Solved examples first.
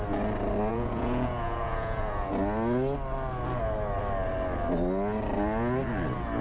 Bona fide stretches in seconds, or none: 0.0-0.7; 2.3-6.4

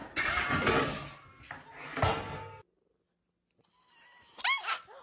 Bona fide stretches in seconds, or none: 0.0-5.0